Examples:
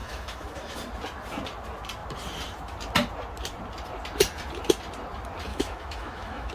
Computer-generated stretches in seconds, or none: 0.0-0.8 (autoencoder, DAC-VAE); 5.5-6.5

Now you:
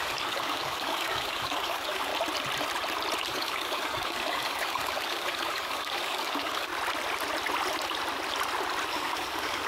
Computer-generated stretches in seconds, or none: 0.0-2.1 (codec, DAC); 3.2-6.7; 8.9-9.7

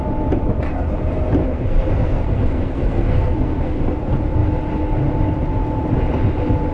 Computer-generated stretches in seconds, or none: 1.4-3.8 (codec, SNAC)

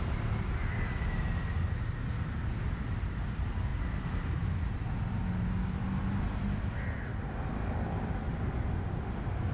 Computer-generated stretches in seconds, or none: none

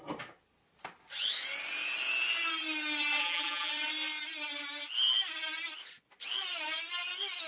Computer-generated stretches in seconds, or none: 3.2-3.7 (vocoder, BigVGAN v2)